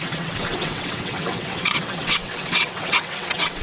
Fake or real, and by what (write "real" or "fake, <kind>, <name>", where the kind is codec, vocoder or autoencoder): fake, vocoder, WaveNeXt